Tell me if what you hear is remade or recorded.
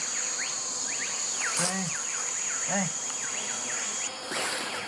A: recorded